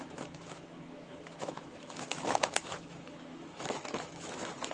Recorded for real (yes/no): no